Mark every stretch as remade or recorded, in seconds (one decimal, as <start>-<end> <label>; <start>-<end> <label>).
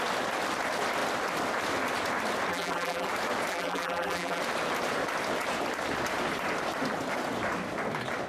0.0-2.5 recorded; 2.5-3.1 remade; 3.1-3.5 recorded; 3.5-4.4 remade; 4.4-8.3 recorded